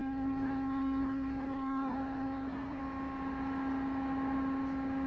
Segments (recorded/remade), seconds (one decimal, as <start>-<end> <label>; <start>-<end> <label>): 0.0-2.8 remade; 2.8-5.1 recorded